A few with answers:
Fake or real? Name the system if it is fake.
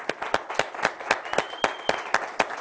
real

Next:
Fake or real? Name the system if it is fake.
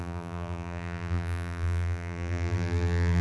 fake, vocoder, BigVGAN v2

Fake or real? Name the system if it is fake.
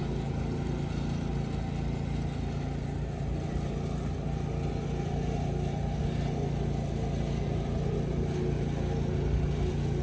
real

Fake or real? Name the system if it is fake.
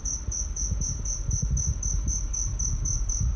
real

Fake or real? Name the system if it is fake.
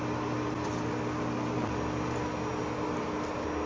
real